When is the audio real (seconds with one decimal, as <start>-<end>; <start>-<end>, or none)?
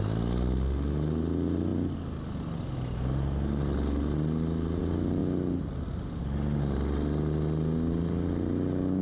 0.0-9.0